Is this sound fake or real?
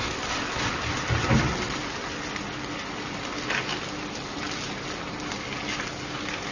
real